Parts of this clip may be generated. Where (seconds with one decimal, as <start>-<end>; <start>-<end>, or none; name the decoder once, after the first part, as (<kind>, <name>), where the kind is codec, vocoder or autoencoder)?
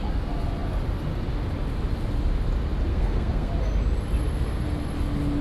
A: 2.9-3.5 (codec, SNAC)